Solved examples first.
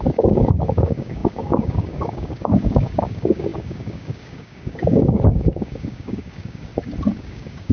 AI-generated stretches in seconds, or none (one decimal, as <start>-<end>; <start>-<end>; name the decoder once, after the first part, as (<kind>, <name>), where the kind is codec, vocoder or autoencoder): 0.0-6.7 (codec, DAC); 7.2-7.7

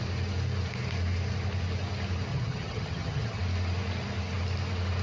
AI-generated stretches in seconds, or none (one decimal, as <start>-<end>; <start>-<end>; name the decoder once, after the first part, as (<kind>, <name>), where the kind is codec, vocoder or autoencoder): 2.3-3.4 (vocoder, HiFi-GAN)

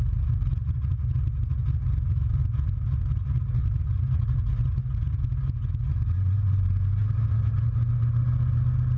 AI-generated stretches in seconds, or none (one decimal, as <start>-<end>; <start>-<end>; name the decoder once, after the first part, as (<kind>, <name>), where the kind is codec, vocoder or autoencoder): none